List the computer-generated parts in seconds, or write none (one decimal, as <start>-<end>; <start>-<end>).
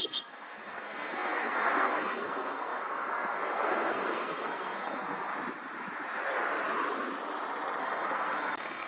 0.0-5.3; 7.8-8.9